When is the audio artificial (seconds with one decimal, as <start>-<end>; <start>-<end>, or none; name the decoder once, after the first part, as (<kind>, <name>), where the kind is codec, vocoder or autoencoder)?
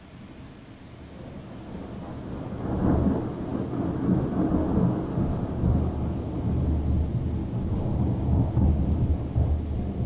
7.4-8.8 (codec, DAC)